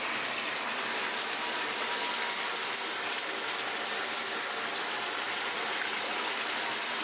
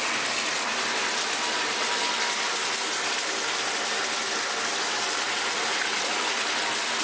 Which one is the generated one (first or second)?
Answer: first